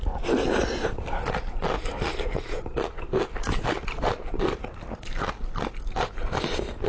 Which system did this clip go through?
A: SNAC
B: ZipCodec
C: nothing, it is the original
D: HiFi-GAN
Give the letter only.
C